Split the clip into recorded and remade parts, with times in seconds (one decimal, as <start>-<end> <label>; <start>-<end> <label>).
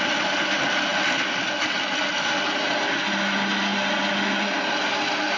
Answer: 0.0-5.4 recorded